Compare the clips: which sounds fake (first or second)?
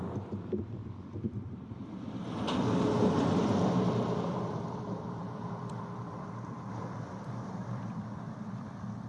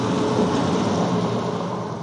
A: first